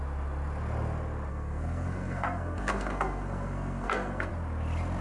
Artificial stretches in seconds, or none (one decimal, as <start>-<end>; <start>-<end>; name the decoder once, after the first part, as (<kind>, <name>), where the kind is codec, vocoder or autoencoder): 1.3-4.3 (codec, SNAC)